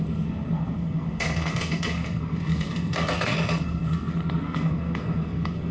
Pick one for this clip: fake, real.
fake